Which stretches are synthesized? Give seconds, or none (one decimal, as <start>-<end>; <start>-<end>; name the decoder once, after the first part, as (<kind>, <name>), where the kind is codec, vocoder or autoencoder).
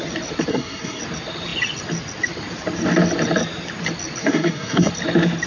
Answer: 0.5-1.0 (codec, SNAC); 4.2-4.9